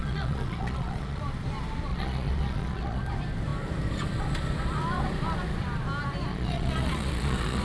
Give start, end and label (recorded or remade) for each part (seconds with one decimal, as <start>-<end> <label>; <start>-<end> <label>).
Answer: 0.0-1.2 remade; 1.2-1.9 recorded; 1.9-3.0 remade; 3.0-6.3 recorded; 6.3-7.6 remade